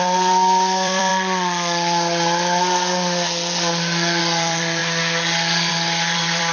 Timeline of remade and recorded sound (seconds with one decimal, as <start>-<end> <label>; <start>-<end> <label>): 0.0-1.1 remade; 1.1-4.2 recorded; 4.2-4.8 remade; 4.8-5.7 recorded; 5.7-6.5 remade